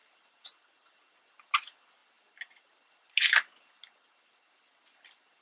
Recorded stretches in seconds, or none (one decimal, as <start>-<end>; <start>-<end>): 0.0-5.4